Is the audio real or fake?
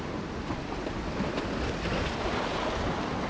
real